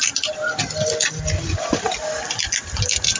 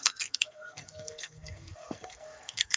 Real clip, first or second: first